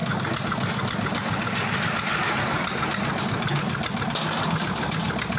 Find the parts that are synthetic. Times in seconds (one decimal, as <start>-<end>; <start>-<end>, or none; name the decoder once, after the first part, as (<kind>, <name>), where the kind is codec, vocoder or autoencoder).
none